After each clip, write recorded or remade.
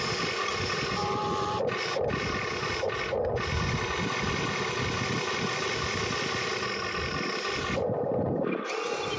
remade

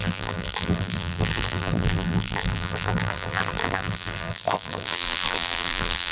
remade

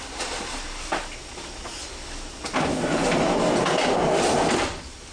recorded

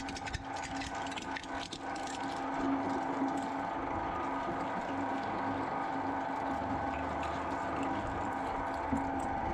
recorded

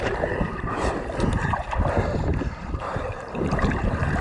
remade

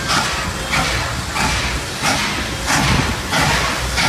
recorded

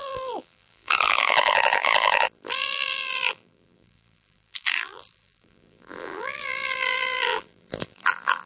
remade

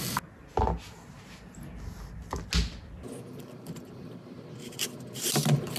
recorded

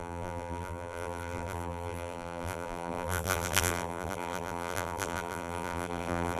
remade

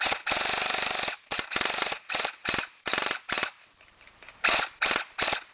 remade